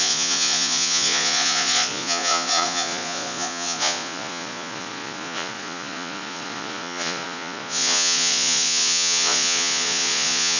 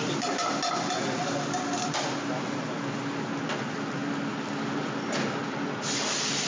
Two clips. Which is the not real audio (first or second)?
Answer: first